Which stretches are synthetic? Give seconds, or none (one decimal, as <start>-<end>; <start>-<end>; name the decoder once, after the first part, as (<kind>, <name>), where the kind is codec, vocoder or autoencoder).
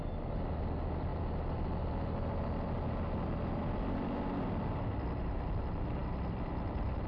none